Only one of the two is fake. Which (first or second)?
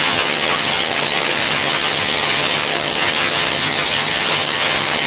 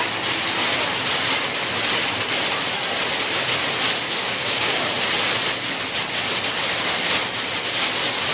first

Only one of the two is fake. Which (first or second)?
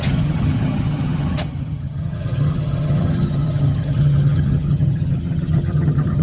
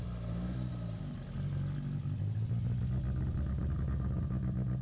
first